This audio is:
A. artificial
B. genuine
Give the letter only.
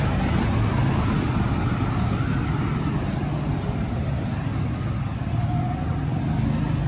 B